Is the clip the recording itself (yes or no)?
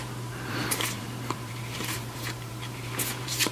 no